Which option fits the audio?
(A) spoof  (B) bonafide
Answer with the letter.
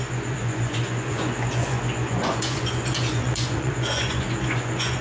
A